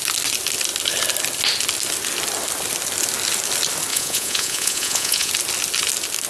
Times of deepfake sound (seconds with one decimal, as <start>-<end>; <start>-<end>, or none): 3.9-5.3